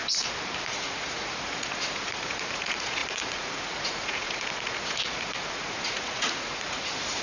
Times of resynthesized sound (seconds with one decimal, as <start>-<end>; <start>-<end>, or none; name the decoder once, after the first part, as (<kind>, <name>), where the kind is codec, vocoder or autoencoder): 0.6-7.2 (vocoder, Vocos)